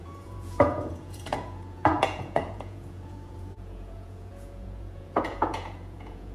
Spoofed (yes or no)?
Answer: yes